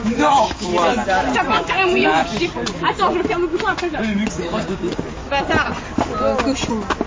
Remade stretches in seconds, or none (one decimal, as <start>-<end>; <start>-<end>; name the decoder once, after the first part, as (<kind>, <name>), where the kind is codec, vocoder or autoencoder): 0.0-0.7 (codec, DAC); 1.5-2.2; 3.9-5.2